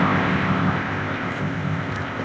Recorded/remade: remade